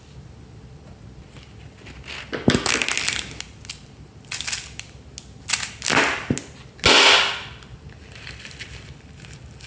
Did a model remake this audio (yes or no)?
no